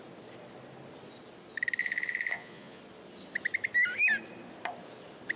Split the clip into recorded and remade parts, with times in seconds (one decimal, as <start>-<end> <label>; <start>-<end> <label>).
0.0-1.8 recorded; 1.8-2.8 remade; 2.8-5.4 recorded